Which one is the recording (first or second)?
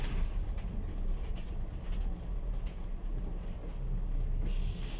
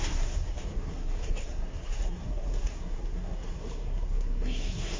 first